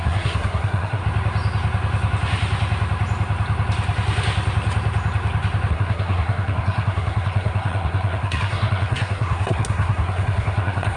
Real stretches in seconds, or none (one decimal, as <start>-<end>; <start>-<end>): 1.0-5.7